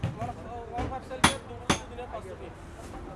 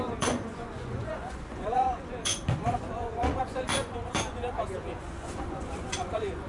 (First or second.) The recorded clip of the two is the first